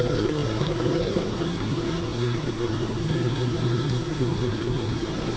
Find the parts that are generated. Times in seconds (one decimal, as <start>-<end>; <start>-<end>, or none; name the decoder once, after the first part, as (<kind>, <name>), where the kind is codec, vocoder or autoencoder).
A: 0.0-5.4 (codec, SNAC)